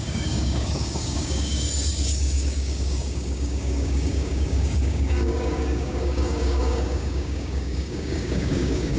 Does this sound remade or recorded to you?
remade